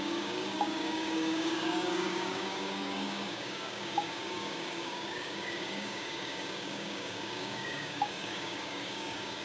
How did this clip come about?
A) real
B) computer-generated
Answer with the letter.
B